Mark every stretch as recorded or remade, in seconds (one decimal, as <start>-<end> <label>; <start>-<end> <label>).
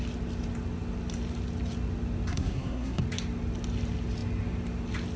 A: 0.0-2.3 recorded; 2.3-3.0 remade; 3.0-5.2 recorded